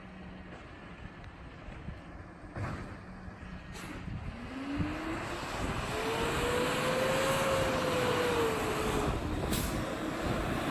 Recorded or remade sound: recorded